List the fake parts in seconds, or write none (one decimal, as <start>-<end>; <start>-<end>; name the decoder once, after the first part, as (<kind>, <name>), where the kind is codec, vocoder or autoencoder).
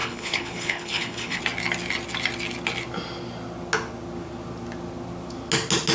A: 0.0-1.4 (codec, HILCodec)